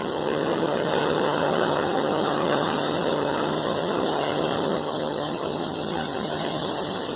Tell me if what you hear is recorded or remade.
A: remade